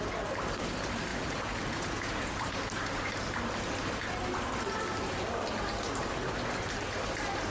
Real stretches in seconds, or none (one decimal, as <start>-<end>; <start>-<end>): 0.0-1.1; 2.5-7.5